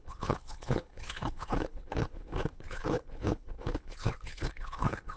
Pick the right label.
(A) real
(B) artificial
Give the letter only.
B